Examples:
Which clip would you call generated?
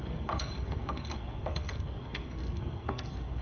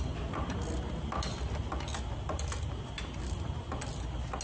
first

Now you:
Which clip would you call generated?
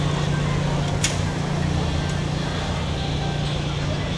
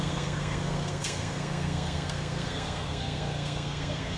second